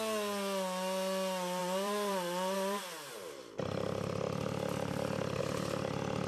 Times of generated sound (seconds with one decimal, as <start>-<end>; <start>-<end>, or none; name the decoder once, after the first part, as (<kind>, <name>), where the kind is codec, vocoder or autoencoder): 1.6-5.4 (vocoder, BigVGAN v2)